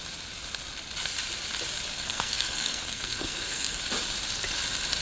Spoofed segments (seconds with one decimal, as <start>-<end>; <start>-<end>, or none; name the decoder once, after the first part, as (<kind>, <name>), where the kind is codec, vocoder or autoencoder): 1.9-3.8 (codec, SNAC)